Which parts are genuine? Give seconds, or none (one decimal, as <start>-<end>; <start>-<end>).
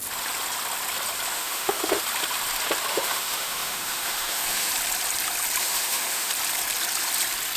0.0-1.3; 2.0-2.9; 4.7-5.6; 6.3-7.6